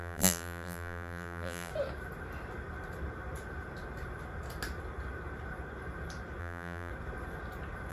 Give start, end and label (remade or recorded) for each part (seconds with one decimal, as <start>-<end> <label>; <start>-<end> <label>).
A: 0.0-1.7 remade; 1.7-6.4 recorded; 6.4-6.9 remade; 6.9-7.9 recorded